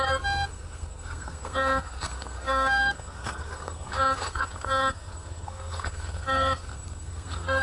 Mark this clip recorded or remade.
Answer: remade